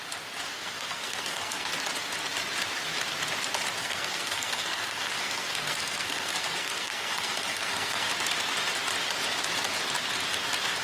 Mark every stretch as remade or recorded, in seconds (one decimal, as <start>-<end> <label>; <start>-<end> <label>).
0.0-0.5 recorded; 0.5-1.7 remade; 1.7-3.8 recorded; 3.8-8.1 remade; 8.1-10.8 recorded